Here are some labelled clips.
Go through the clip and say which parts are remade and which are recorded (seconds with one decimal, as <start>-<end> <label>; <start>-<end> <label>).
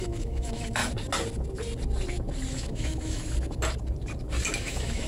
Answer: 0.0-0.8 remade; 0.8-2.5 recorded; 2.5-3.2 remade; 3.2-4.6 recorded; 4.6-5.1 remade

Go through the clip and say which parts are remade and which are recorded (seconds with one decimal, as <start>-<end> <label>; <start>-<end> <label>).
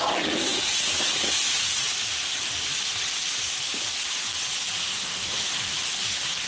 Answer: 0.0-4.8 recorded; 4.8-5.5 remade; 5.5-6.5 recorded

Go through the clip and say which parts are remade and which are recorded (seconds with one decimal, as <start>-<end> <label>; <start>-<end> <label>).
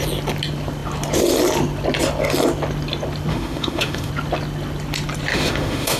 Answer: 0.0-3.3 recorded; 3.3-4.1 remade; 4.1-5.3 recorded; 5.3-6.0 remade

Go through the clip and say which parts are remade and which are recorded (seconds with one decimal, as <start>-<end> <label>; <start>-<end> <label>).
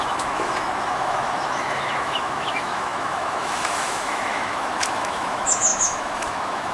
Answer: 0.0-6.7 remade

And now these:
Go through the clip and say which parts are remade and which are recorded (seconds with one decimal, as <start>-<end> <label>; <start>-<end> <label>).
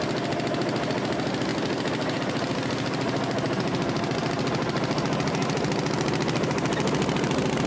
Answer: 0.0-7.7 recorded